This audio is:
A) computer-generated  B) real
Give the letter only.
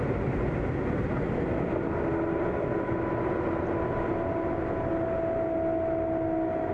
B